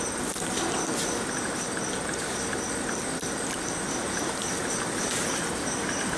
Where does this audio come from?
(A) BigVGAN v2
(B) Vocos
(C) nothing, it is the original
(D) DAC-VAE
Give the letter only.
C